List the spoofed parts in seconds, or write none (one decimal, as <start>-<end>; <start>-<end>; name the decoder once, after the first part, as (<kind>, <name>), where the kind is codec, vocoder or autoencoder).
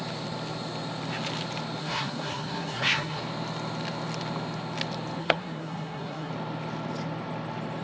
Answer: 1.8-3.2 (codec, SNAC); 5.2-6.3